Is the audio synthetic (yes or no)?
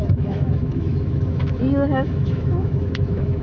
yes